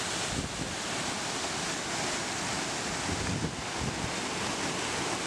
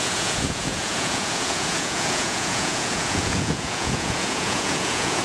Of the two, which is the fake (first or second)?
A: second